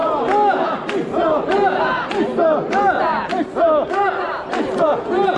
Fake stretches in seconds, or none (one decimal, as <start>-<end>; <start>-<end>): none